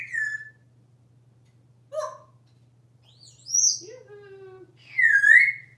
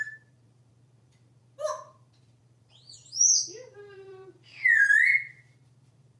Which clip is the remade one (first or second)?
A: second